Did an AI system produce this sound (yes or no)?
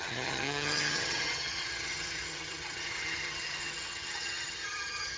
yes